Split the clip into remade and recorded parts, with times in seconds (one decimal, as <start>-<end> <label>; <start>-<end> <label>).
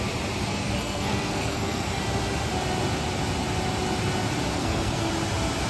0.0-0.4 recorded; 0.4-2.0 remade; 2.0-4.5 recorded; 4.5-5.1 remade; 5.1-5.7 recorded